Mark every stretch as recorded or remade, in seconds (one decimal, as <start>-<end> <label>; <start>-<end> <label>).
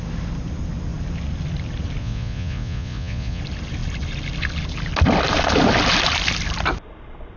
0.0-2.0 recorded; 2.0-3.4 remade; 3.4-7.4 recorded